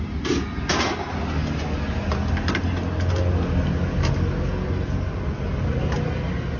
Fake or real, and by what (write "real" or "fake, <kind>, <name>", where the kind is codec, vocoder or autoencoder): real